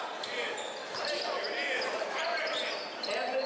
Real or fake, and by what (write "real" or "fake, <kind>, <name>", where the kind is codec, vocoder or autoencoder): real